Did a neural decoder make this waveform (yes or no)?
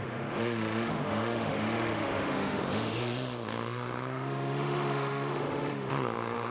yes